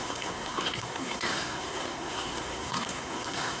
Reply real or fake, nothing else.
fake